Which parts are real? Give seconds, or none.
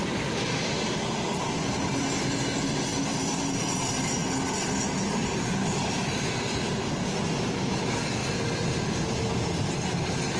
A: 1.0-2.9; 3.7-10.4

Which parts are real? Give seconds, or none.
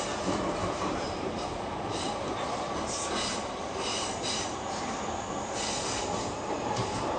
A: 0.0-0.6; 2.7-3.9; 4.9-7.2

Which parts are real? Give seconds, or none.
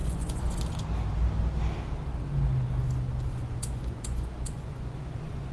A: 0.6-3.3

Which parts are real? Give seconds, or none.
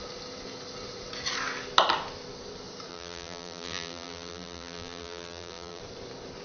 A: 0.0-2.9; 5.8-6.4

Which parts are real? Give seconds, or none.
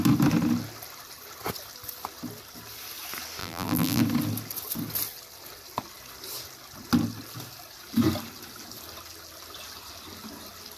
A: 0.0-3.4; 4.0-10.8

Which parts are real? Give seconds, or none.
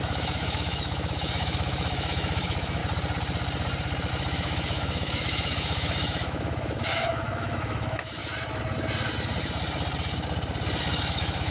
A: 2.8-4.1; 8.2-11.0